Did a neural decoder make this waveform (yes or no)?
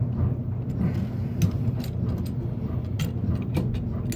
no